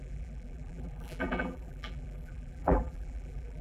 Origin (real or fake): fake